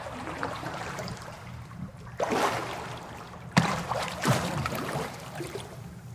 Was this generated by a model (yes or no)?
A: yes